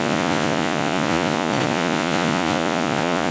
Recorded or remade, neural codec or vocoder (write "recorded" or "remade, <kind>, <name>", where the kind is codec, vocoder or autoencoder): remade, vocoder, Vocos